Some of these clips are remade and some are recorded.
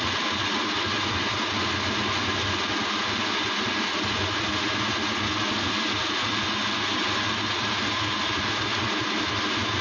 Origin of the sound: recorded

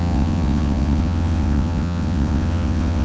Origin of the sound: remade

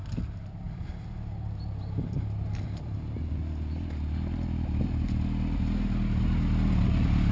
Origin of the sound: recorded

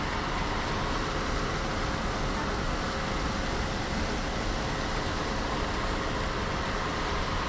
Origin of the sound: recorded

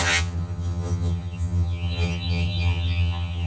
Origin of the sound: remade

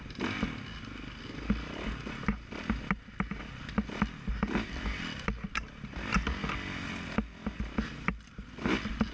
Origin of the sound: recorded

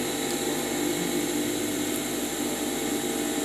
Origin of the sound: recorded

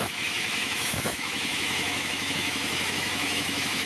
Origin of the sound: remade